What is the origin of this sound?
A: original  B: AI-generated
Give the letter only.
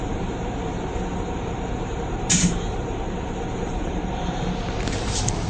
B